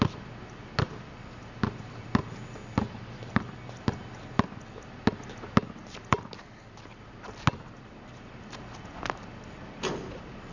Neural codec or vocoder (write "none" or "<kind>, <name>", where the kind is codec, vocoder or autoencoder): none